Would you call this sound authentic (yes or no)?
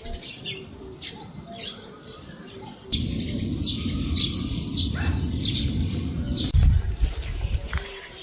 yes